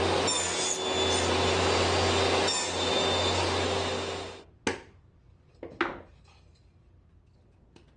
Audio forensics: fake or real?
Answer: real